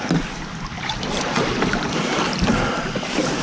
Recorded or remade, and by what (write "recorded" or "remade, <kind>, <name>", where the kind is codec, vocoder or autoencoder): recorded